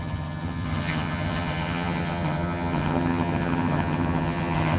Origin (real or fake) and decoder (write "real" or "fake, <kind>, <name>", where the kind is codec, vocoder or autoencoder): fake, vocoder, HiFi-GAN